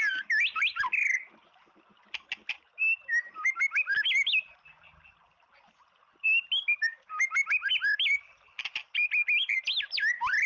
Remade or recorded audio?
recorded